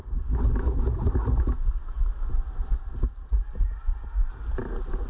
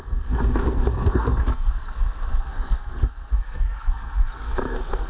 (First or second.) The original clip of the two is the first